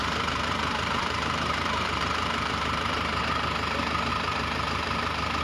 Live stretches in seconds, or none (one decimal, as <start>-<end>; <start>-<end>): 3.2-4.1